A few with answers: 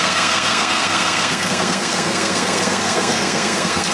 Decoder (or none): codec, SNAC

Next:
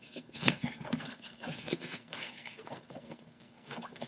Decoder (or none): codec, SNAC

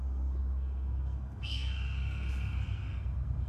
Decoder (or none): codec, SNAC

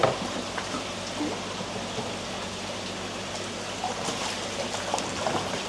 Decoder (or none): none